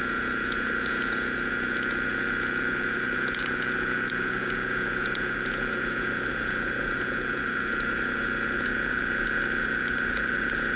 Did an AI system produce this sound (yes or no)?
yes